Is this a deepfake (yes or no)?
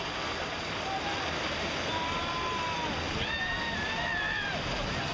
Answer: no